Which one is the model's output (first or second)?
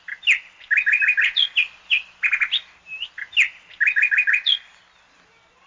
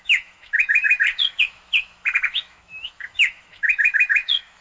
second